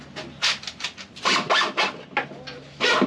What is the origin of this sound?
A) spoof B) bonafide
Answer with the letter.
B